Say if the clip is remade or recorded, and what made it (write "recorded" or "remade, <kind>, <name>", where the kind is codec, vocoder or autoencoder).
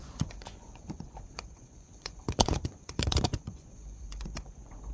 remade, vocoder, Vocos